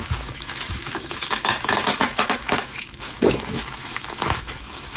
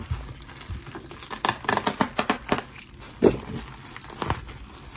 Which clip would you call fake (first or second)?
first